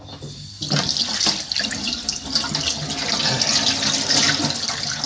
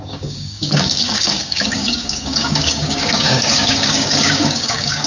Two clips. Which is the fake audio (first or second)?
second